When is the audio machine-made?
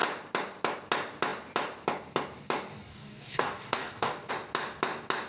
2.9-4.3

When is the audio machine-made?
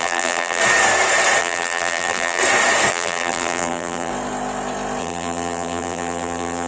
0.0-0.6; 1.4-2.4; 2.9-4.1; 5.0-6.7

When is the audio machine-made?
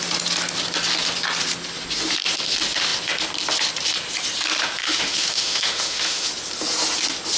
4.8-6.3